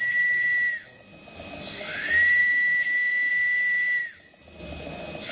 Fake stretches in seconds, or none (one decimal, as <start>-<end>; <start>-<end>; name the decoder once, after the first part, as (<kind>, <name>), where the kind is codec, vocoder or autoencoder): 2.4-3.3 (autoencoder, DAC-VAE)